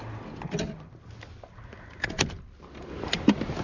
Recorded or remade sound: recorded